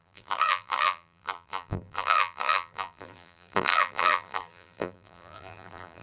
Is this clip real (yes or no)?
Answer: no